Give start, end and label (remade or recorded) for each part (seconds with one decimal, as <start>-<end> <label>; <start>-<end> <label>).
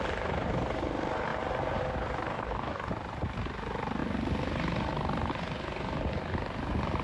0.0-2.3 recorded; 2.3-2.9 remade; 2.9-7.0 recorded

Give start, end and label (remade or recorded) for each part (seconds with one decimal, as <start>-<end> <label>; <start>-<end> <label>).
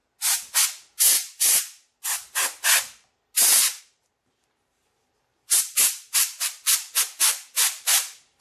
0.0-3.8 recorded; 3.8-8.4 remade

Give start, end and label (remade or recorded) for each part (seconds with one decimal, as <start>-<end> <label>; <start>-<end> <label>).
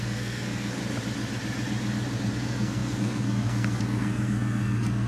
0.0-0.8 remade; 0.8-2.3 recorded; 2.3-5.1 remade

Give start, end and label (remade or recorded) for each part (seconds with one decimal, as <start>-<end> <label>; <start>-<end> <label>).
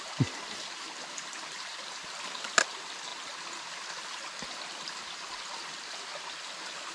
0.0-6.9 recorded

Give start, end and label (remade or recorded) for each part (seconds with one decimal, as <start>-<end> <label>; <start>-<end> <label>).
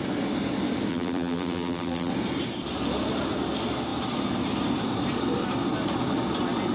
0.0-0.9 recorded; 0.9-2.1 remade; 2.1-6.7 recorded